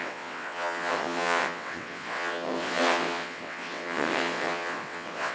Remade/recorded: remade